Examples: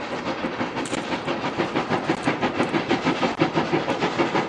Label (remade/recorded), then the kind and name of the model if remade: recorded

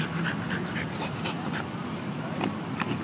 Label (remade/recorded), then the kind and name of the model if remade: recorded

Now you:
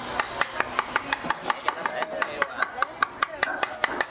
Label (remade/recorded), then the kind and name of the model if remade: recorded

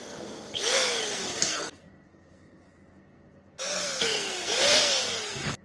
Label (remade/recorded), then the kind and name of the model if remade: remade, codec, SNAC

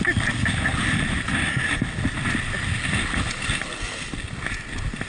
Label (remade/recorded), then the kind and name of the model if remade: recorded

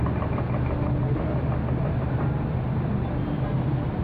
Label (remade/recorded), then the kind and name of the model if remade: recorded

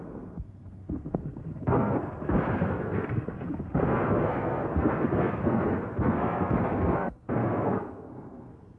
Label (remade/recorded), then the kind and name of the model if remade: remade, codec, SNAC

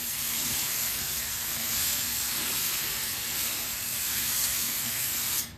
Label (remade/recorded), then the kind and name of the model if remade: remade, codec, SNAC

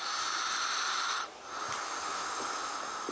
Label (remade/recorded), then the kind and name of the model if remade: recorded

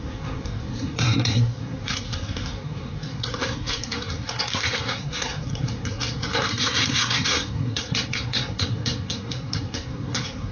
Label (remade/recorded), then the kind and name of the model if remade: remade, codec, SNAC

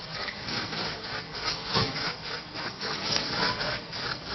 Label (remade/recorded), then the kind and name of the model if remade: remade, codec, SNAC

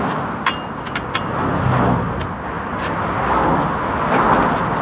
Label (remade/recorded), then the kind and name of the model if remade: recorded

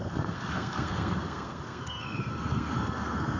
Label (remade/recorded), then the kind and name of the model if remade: remade, codec, SNAC